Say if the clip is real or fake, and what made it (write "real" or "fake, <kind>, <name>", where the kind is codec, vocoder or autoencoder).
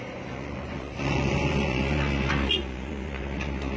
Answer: fake, vocoder, Vocos